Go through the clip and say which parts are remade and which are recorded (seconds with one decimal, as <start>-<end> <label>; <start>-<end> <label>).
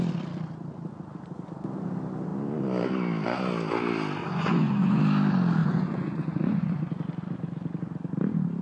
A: 0.0-4.2 recorded; 4.2-5.0 remade; 5.0-5.6 recorded; 5.6-6.9 remade; 6.9-8.6 recorded